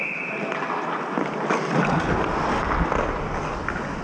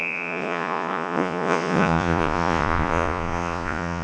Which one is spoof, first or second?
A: second